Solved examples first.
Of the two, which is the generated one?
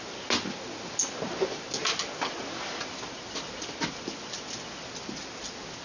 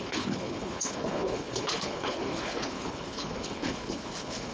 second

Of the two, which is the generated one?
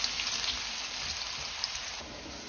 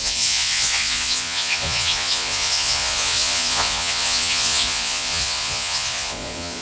second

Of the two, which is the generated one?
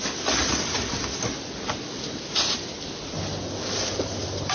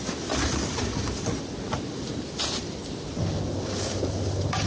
second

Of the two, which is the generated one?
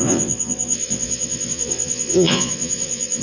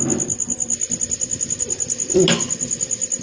first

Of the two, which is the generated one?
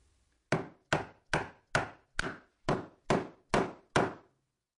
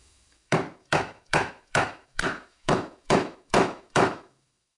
second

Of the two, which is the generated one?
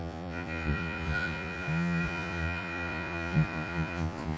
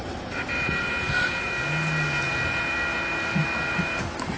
first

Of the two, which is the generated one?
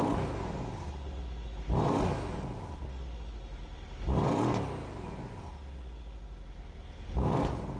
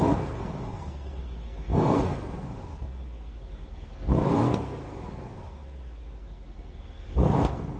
second